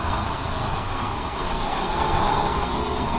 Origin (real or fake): fake